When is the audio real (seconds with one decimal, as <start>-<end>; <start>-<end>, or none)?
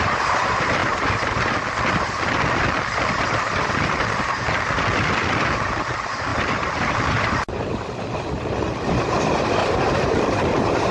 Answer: 0.0-6.3; 7.8-9.6